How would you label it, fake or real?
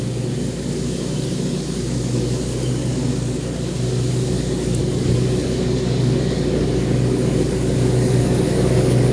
fake